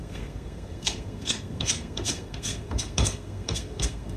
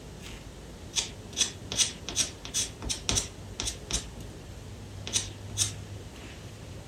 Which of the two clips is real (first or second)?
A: second